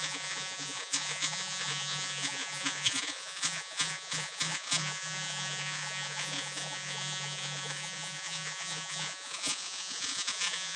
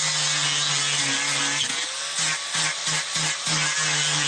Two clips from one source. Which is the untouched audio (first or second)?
second